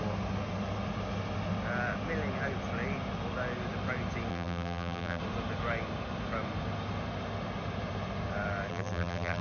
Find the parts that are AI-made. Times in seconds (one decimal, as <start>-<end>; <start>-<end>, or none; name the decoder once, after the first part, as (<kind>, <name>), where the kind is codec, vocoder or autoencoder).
4.3-5.2 (vocoder, BigVGAN v2); 8.7-9.4

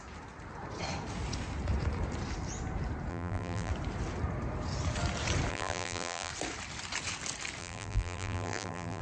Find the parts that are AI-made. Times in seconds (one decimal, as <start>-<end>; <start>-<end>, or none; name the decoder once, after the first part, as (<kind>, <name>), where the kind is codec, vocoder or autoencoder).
3.1-3.7 (vocoder, BigVGAN v2); 5.5-6.3; 7.6-9.0

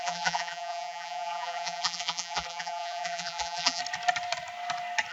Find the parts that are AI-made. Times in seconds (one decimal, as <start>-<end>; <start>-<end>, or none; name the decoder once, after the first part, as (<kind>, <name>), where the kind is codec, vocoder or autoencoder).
0.0-3.8 (vocoder, BigVGAN v2)

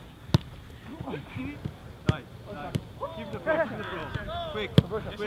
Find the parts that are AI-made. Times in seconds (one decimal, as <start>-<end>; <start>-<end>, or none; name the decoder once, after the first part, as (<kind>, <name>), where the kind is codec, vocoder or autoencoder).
0.9-1.4 (vocoder, BigVGAN v2); 1.8-2.9

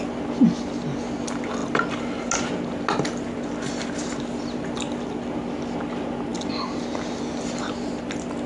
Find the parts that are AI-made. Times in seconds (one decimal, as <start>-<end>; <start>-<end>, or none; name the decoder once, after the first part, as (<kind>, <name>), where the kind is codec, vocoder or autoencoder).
none

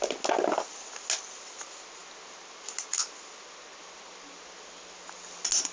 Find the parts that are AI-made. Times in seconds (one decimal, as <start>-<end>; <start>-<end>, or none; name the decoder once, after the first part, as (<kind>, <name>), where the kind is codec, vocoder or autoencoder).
none

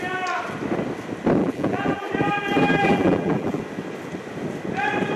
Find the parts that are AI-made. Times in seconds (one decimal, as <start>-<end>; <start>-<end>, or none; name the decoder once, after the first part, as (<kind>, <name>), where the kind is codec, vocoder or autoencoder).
1.4-2.1 (vocoder, BigVGAN v2); 2.5-3.6